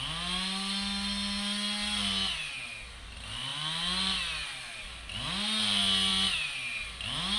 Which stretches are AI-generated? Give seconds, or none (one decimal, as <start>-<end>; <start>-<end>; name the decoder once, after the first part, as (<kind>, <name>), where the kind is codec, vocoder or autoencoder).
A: none